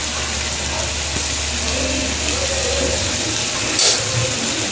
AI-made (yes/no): no